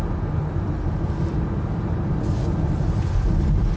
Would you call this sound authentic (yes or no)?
yes